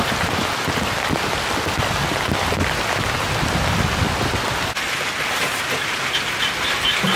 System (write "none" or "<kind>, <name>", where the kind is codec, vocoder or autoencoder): none